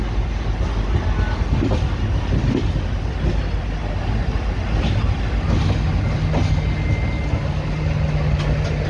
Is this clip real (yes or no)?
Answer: yes